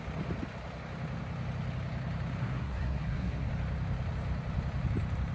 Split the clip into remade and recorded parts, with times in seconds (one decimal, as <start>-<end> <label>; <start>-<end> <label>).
0.0-2.4 recorded; 2.4-3.5 remade; 3.5-5.3 recorded